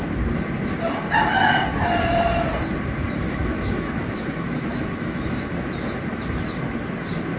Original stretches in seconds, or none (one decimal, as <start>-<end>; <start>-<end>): 0.0-3.2; 5.5-7.4